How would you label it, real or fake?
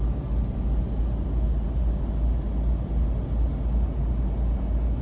real